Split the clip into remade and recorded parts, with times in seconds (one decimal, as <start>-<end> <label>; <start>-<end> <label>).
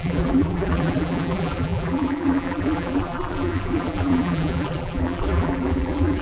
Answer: 0.0-6.2 remade